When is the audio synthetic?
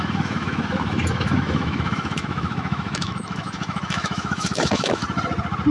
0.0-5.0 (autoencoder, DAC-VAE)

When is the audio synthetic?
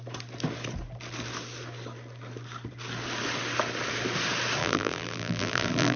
4.6-6.0 (vocoder, BigVGAN v2)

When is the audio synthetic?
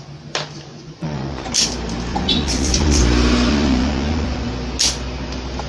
0.7-1.5 (vocoder, Vocos); 2.1-3.0; 3.5-4.5